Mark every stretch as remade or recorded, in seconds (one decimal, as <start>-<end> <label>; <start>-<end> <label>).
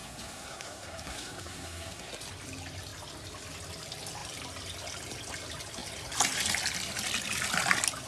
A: 0.0-2.1 remade; 2.1-8.1 recorded